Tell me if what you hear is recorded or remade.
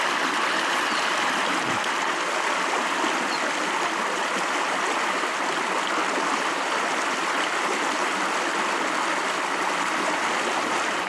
recorded